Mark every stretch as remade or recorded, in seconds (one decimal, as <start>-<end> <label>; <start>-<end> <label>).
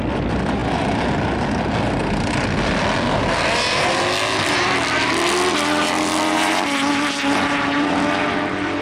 0.0-8.8 recorded